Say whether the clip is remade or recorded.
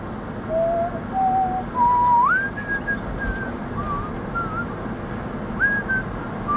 recorded